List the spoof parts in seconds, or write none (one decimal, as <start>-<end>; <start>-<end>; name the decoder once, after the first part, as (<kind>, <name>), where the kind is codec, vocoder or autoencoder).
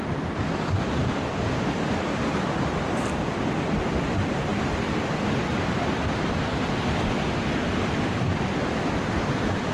0.0-1.0 (vocoder, BigVGAN v2); 1.9-4.5; 6.6-9.7